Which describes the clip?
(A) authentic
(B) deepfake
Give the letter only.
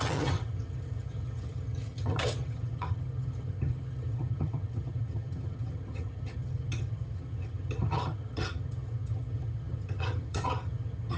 B